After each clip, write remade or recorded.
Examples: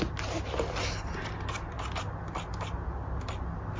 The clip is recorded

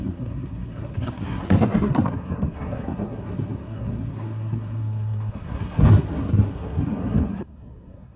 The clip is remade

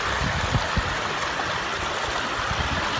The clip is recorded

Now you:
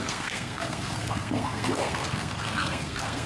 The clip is remade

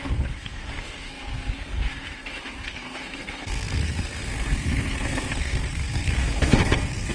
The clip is remade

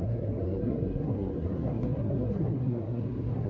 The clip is remade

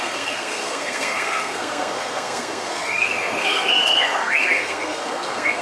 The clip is remade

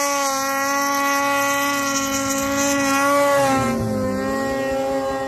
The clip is recorded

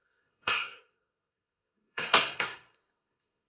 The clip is remade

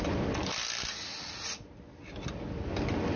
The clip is recorded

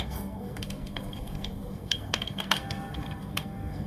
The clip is remade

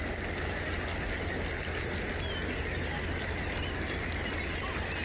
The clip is recorded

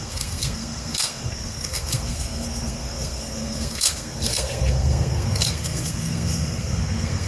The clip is remade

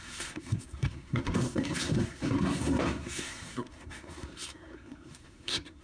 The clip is remade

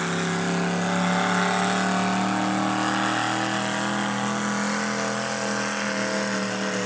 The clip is recorded